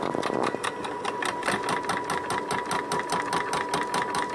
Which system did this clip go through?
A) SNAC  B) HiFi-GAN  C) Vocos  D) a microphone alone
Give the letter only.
D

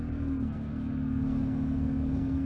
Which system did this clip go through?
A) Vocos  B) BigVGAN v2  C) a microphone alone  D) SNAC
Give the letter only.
D